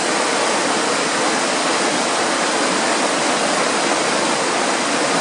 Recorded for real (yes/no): yes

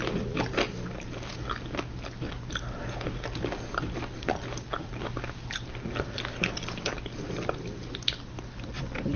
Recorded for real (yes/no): yes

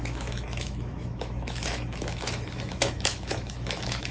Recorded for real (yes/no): no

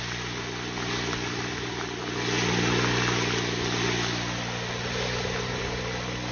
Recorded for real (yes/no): yes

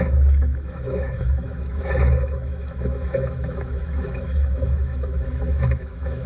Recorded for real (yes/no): no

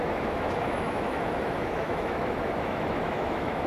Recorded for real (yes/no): no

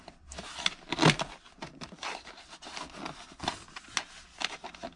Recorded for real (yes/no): yes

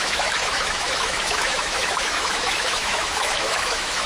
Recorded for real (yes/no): no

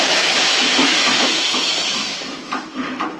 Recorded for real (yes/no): no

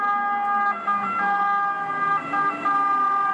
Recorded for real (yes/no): yes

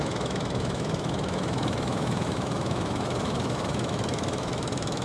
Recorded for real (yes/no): no